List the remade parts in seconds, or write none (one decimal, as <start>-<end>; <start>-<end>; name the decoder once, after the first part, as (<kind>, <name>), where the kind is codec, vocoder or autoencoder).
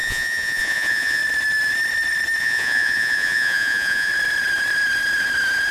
0.0-1.2 (vocoder, Vocos); 2.4-4.1